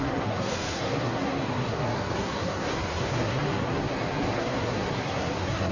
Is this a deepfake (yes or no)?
yes